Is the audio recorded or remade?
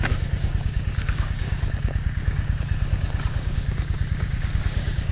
remade